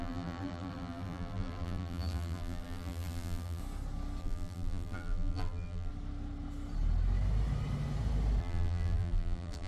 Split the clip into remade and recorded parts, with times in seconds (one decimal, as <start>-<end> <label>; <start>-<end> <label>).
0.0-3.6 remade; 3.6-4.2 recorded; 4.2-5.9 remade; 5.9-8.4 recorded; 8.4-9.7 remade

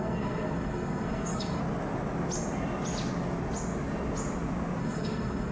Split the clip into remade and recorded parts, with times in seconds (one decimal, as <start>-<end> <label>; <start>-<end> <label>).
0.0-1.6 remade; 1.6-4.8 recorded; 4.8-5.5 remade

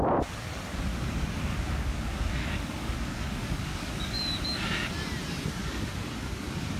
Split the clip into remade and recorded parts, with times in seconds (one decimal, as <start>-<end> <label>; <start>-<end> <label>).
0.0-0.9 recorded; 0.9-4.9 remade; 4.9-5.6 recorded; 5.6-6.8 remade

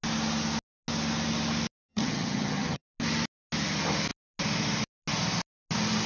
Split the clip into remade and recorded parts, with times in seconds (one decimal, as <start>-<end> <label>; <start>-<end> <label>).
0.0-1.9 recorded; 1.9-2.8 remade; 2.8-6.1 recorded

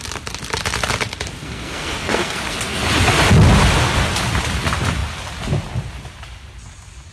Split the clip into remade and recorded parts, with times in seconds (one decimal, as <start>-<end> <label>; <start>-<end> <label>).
0.0-1.4 recorded; 1.4-2.9 remade; 2.9-7.1 recorded